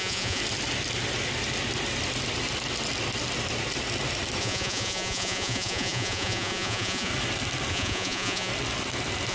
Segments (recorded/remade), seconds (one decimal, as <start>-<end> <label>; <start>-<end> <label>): 0.0-0.4 remade; 0.4-4.4 recorded; 4.4-7.1 remade; 7.1-7.7 recorded; 7.7-8.5 remade; 8.5-9.3 recorded